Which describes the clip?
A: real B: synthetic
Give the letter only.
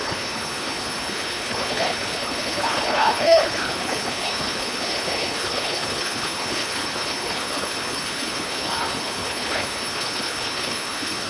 B